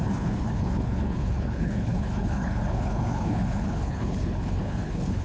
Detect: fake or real fake